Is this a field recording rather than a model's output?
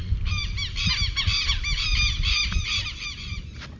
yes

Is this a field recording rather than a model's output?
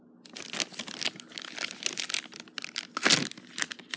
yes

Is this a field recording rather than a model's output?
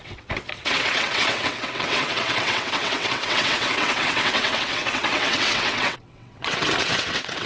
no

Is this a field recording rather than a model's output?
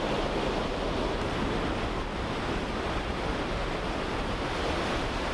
yes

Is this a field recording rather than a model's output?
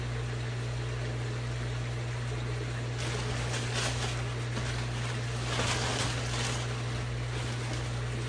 yes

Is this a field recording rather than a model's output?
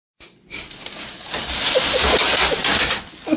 yes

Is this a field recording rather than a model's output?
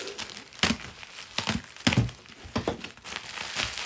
yes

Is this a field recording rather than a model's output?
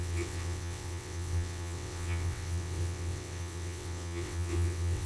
no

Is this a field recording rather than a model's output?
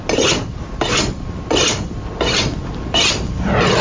yes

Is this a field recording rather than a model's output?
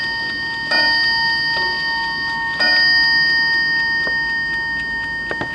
yes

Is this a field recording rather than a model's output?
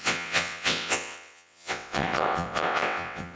no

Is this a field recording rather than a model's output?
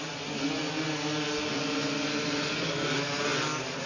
yes